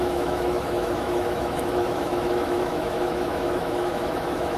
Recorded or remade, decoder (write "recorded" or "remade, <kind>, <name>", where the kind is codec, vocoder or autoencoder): remade, autoencoder, DAC-VAE